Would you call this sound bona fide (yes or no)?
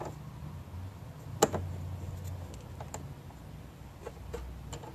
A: yes